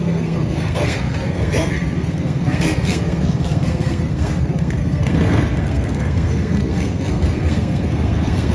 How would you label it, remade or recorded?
remade